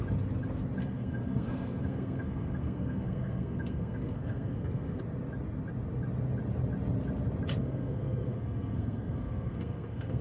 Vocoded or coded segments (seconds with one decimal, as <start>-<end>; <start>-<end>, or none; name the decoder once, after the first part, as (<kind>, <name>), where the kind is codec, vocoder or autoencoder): 0.8-5.0 (codec, SNAC); 7.6-10.2